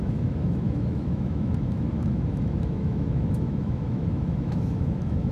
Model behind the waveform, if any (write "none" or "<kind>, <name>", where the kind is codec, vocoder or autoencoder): autoencoder, DAC-VAE